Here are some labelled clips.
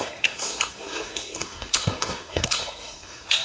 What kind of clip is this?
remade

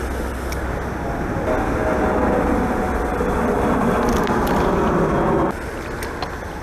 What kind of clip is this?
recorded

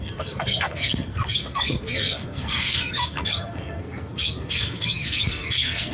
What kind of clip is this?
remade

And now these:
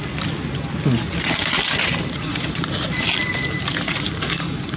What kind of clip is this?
recorded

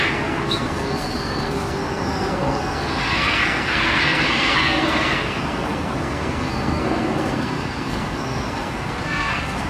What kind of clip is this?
remade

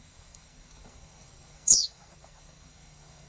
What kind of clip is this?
remade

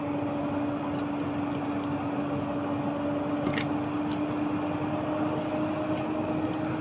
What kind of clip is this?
recorded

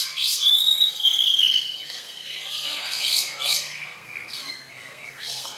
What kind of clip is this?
remade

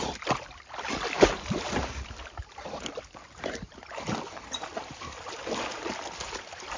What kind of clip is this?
recorded